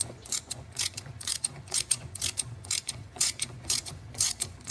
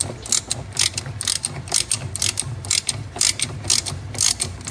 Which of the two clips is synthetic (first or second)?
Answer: first